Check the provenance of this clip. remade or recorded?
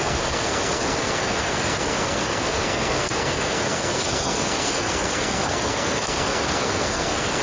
remade